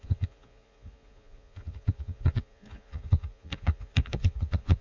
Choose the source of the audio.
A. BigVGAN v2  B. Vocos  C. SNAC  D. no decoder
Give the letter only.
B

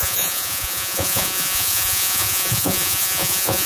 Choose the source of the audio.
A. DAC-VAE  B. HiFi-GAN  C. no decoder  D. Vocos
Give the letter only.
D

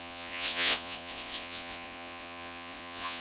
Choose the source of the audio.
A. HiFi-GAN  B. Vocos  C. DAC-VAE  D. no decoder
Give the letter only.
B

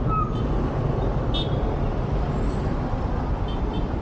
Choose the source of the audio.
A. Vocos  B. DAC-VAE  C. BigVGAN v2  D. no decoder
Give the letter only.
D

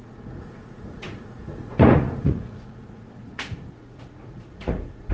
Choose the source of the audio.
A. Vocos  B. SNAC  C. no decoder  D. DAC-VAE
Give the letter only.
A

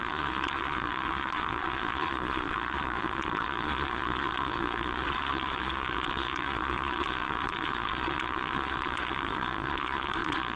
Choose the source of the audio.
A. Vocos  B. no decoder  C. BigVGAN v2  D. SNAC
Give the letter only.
A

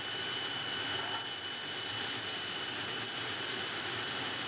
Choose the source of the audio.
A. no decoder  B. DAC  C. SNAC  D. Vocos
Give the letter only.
A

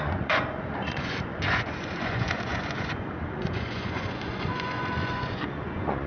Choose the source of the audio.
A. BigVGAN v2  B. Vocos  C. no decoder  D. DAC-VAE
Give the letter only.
B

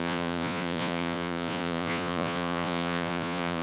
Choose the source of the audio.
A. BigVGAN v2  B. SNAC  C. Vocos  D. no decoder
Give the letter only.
C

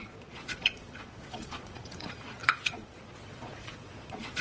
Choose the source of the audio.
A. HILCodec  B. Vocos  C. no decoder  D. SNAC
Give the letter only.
B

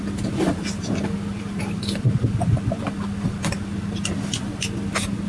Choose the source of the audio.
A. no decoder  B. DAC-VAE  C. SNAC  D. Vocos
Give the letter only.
A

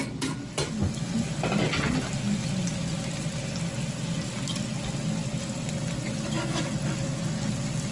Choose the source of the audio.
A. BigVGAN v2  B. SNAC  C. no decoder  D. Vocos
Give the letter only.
C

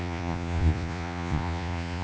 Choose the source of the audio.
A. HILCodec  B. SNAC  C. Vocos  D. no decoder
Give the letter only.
C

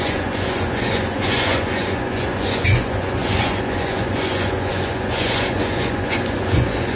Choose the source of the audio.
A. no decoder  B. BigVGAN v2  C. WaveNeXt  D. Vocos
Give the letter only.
D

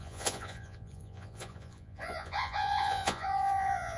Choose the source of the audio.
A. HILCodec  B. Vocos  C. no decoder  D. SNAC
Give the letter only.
B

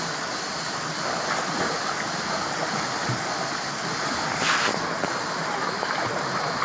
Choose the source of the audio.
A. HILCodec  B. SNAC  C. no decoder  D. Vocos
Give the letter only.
C